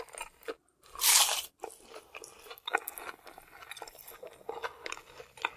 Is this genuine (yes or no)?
yes